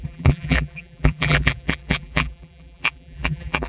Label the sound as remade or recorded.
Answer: remade